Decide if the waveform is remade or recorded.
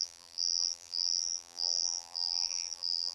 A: remade